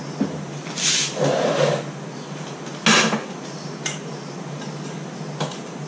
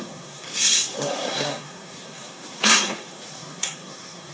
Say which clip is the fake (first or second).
second